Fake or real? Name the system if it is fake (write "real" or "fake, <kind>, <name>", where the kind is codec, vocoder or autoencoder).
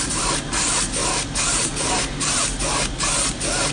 real